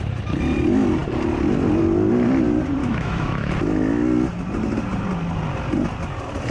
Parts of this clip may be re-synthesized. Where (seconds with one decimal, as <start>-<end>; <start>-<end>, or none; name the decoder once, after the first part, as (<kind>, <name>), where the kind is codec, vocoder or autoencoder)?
2.8-3.5 (autoencoder, DAC-VAE)